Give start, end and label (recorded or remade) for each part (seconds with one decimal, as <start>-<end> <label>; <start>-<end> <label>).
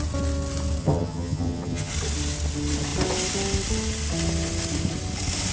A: 0.0-0.8 recorded; 0.8-1.9 remade; 1.9-5.5 recorded